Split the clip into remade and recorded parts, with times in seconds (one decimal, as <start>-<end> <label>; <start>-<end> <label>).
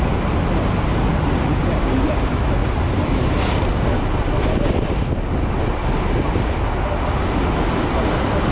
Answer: 0.0-8.5 recorded